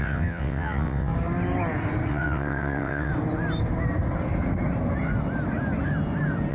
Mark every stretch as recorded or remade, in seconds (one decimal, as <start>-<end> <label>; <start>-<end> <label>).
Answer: 0.0-1.1 remade; 1.1-2.1 recorded; 2.1-3.1 remade; 3.1-6.5 recorded